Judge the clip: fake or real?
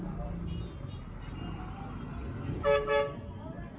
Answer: real